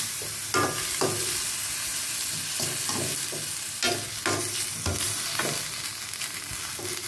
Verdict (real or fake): real